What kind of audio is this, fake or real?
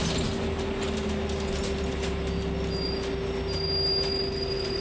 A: real